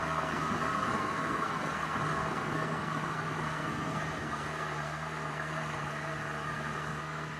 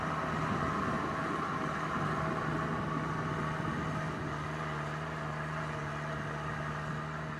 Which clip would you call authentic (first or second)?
second